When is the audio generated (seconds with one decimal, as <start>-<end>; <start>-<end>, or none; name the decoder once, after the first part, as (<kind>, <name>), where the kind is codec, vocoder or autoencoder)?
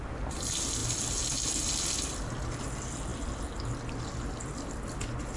none